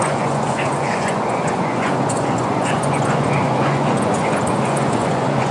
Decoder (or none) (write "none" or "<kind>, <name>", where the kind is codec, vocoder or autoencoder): vocoder, Vocos